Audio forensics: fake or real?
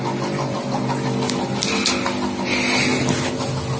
real